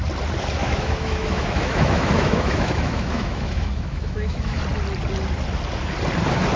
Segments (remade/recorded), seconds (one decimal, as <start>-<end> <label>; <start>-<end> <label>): 0.0-0.6 recorded; 0.6-4.6 remade; 4.6-6.6 recorded